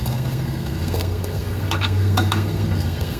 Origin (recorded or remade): remade